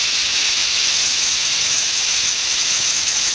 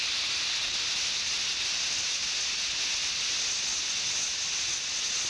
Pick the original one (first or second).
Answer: second